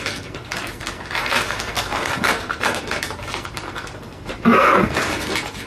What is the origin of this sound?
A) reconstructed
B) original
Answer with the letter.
A